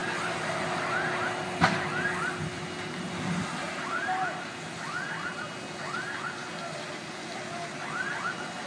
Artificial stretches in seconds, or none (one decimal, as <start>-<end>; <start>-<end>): none